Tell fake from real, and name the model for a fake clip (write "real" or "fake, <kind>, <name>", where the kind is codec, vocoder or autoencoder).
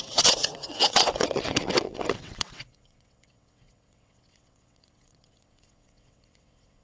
fake, vocoder, WaveNeXt